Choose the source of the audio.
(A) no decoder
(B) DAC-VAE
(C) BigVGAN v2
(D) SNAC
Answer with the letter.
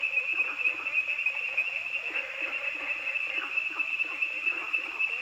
A